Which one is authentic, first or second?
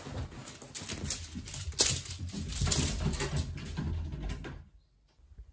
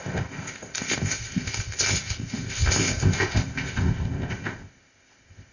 first